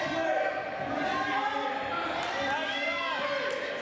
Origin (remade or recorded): recorded